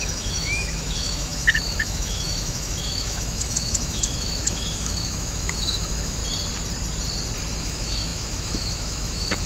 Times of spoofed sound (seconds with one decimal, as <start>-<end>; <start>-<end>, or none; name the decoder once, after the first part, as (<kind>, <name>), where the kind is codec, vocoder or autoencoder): 0.0-6.2 (autoencoder, DAC-VAE); 7.6-9.5